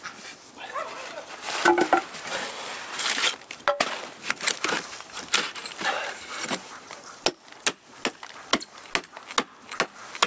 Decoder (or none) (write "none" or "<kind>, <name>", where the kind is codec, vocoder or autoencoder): none